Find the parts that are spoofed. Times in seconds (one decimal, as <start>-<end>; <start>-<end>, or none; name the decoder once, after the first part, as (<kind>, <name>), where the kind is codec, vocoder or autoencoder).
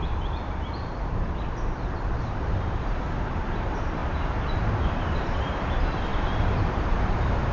0.0-4.0 (vocoder, BigVGAN v2); 5.0-7.5